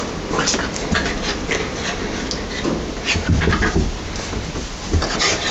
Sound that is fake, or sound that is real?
real